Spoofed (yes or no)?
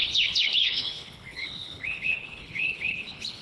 yes